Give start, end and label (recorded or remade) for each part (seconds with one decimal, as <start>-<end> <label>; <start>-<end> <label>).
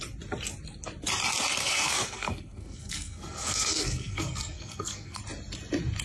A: 0.0-1.6 recorded; 1.6-5.2 remade; 5.2-6.0 recorded